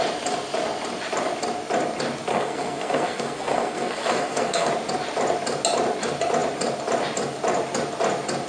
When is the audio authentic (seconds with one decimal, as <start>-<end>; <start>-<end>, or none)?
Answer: 0.0-2.3; 4.7-8.5